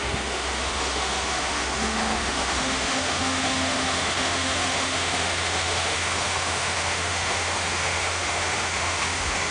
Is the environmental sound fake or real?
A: fake